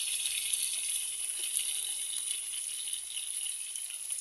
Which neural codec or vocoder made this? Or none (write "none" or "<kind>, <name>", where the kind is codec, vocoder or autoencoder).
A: none